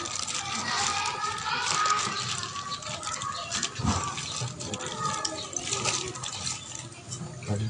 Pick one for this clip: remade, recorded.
remade